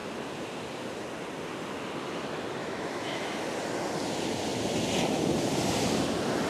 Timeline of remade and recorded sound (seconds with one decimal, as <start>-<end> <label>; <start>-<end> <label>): 0.0-2.6 recorded; 2.6-3.2 remade; 3.2-6.5 recorded